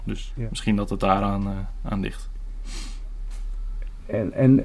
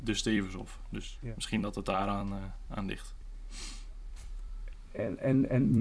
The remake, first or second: second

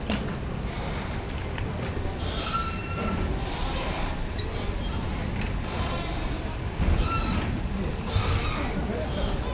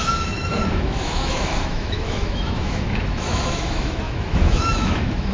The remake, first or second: second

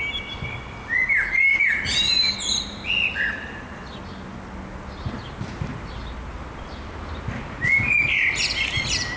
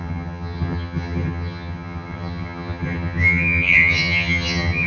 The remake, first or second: second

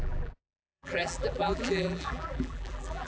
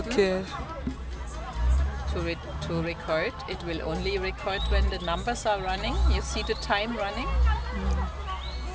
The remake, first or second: first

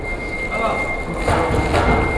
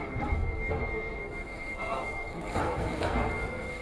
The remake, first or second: second